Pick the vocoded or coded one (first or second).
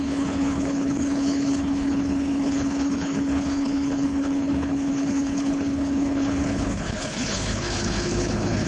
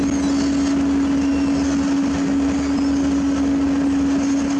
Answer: first